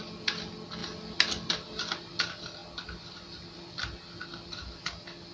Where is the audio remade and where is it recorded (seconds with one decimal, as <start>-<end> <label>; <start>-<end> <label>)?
0.0-5.3 recorded